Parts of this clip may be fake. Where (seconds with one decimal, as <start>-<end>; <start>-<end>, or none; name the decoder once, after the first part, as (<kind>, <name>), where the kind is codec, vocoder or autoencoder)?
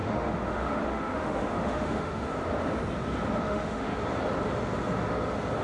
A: 0.0-2.3 (autoencoder, DAC-VAE); 3.4-3.9